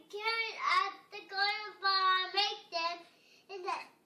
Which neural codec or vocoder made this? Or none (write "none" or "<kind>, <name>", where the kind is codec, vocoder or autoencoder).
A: none